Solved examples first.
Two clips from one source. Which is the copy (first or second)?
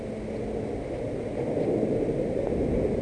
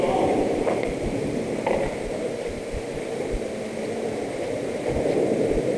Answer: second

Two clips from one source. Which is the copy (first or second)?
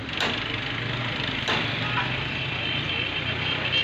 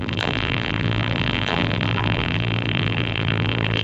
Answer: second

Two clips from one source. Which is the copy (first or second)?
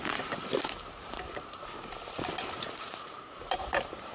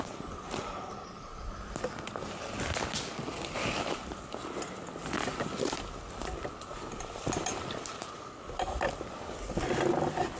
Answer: first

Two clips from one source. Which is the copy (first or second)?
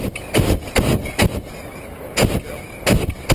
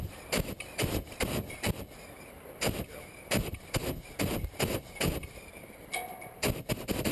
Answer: second